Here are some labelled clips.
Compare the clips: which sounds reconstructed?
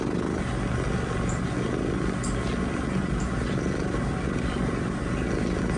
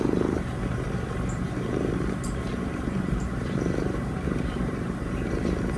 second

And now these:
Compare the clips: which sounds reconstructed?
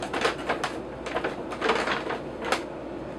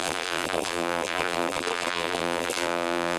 second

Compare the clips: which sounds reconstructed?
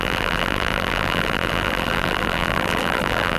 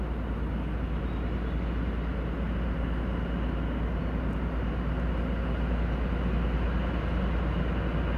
first